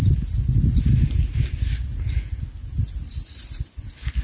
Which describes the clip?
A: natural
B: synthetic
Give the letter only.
A